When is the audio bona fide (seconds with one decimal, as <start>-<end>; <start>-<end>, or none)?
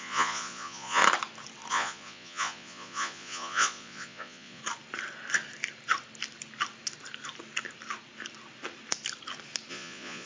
1.0-1.7; 4.6-9.7